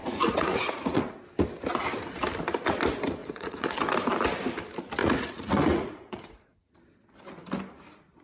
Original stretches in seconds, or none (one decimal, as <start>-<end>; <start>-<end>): 1.1-3.2; 3.8-5.0; 6.7-8.2